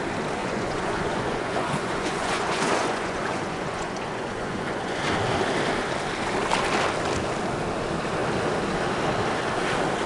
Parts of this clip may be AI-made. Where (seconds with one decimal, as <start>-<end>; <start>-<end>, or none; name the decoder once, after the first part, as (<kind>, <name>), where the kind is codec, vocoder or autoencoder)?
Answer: 0.4-5.0 (vocoder, Vocos)